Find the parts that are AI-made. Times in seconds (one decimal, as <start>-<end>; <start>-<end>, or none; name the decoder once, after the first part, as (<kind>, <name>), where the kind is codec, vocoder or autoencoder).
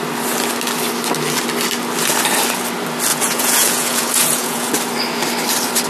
3.1-4.7 (vocoder, Vocos)